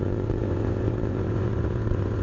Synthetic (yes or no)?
yes